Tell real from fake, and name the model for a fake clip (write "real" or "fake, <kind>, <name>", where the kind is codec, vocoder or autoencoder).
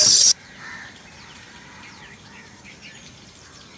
fake, vocoder, BigVGAN v2